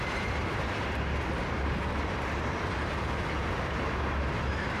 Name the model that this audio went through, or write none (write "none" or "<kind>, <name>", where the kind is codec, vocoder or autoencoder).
none